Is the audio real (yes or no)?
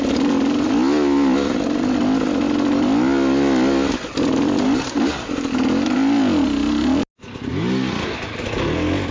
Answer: yes